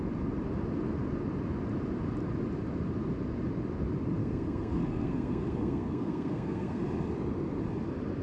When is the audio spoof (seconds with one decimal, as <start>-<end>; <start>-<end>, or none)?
4.2-6.8